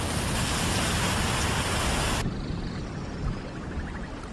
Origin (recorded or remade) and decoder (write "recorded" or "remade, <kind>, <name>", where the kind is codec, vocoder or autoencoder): recorded